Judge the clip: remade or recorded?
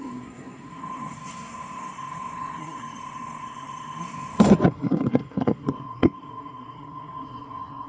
remade